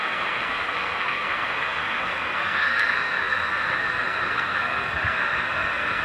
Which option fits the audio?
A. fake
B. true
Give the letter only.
A